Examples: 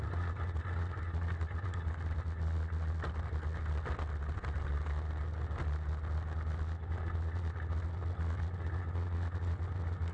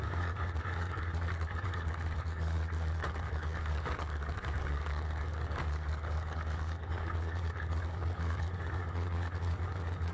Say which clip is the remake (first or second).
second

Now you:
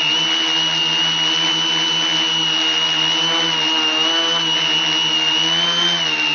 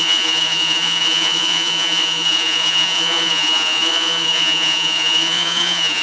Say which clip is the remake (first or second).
second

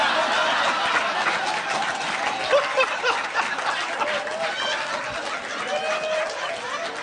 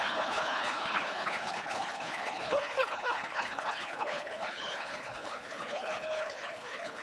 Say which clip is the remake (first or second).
second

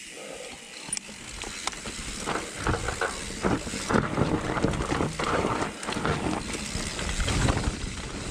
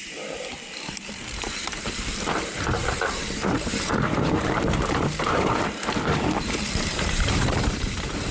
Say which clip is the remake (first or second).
second